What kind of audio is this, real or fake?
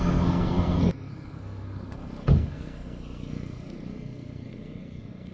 fake